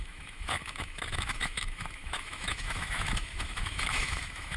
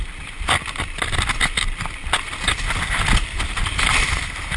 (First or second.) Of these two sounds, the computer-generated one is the first